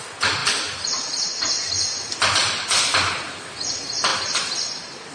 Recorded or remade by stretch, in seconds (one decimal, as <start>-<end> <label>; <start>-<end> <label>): 0.0-5.1 recorded

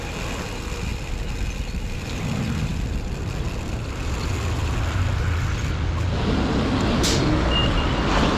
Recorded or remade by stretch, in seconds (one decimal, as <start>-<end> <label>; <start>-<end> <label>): 0.0-8.4 recorded

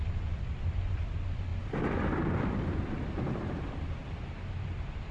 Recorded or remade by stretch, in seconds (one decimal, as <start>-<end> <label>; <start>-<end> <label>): 0.0-1.5 recorded; 1.5-3.8 remade; 3.8-5.1 recorded

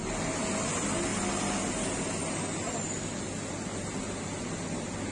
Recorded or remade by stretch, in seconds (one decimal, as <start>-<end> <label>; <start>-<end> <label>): 0.0-5.1 recorded

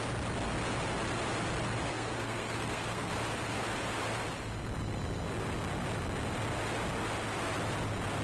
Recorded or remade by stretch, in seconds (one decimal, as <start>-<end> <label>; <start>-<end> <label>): 0.0-1.9 recorded; 1.9-3.1 remade; 3.1-8.2 recorded

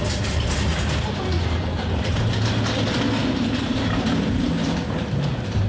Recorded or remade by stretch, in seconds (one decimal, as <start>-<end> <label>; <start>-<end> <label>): 0.0-0.7 recorded; 0.7-2.5 remade; 2.5-3.2 recorded; 3.2-5.7 remade